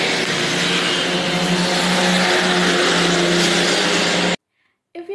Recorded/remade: recorded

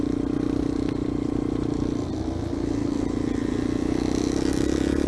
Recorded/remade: recorded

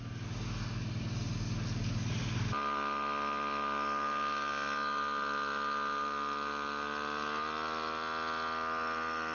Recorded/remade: recorded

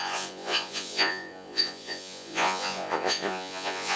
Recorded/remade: remade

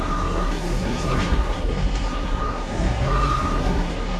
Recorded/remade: remade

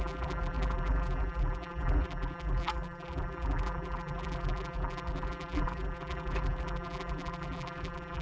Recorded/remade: remade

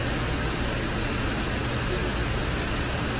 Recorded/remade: recorded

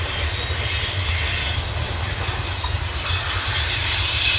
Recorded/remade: recorded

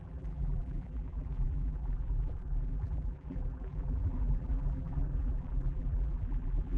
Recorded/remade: remade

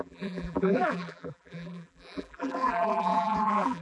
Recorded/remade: remade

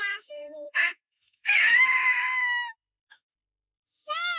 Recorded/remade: remade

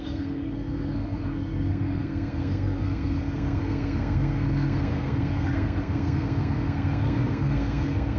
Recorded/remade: remade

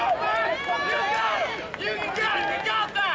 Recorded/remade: remade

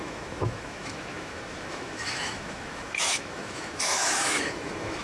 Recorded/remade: remade